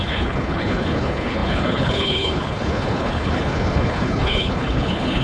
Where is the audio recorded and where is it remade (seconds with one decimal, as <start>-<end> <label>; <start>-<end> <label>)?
0.0-5.2 remade